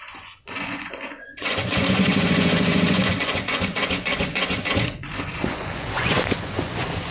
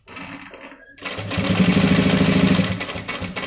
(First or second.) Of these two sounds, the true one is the second